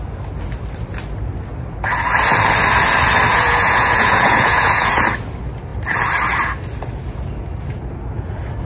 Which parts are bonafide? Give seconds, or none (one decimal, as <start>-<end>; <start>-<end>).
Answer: 0.0-3.3; 4.9-8.7